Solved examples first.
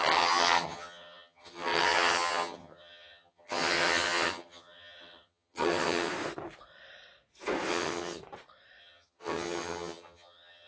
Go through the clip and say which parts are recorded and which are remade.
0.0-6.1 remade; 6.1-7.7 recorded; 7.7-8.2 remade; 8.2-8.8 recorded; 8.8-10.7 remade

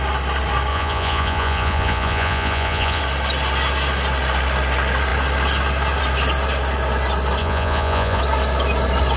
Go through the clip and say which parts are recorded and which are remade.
0.0-0.7 recorded; 0.7-3.0 remade; 3.0-7.4 recorded; 7.4-8.2 remade; 8.2-9.2 recorded

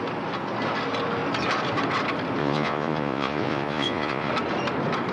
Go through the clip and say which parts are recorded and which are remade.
0.0-2.4 recorded; 2.4-4.3 remade; 4.3-5.1 recorded

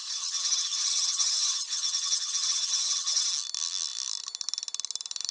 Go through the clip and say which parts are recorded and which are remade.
0.0-3.2 remade; 3.2-5.3 recorded